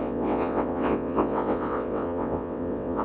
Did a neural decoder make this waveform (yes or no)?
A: yes